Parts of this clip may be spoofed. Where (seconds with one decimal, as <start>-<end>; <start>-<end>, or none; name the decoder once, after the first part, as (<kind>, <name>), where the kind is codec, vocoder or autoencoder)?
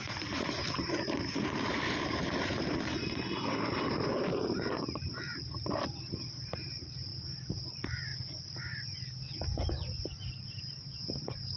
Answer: 0.0-8.1 (vocoder, BigVGAN v2); 10.3-11.6